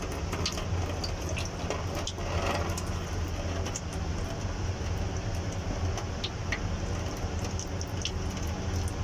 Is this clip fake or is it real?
real